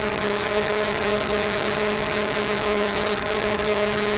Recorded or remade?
remade